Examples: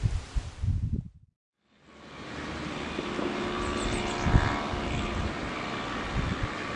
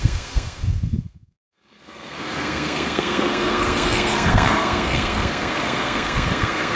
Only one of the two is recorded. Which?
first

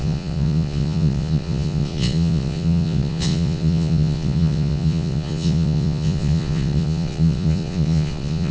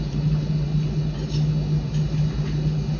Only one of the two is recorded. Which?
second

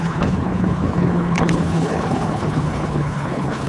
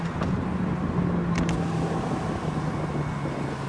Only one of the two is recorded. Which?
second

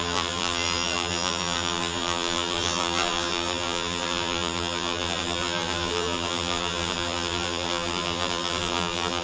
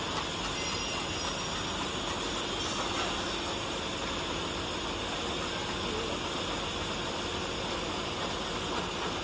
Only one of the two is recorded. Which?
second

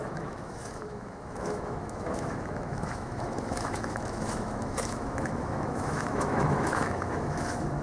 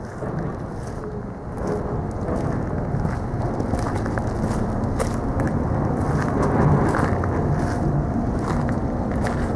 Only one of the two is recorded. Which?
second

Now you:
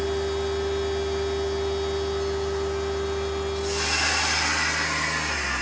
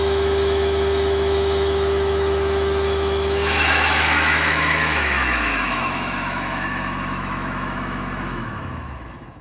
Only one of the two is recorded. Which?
first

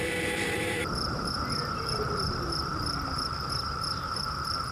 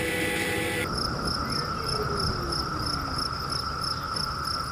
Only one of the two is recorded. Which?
second